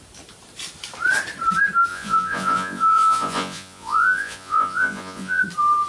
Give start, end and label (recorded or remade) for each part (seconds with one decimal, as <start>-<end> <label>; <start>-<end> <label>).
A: 0.0-1.9 recorded; 1.9-5.4 remade; 5.4-5.9 recorded